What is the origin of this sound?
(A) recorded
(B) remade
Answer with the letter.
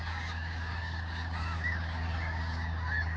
B